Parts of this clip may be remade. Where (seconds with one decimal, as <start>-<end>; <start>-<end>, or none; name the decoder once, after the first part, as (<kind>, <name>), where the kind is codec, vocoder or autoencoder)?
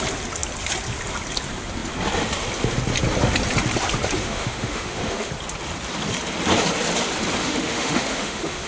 4.2-5.3 (autoencoder, DAC-VAE); 7.4-8.7